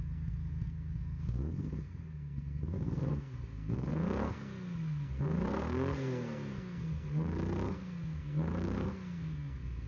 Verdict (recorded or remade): remade